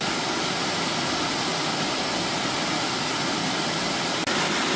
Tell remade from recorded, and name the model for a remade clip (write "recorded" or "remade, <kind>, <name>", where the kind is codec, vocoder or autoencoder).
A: recorded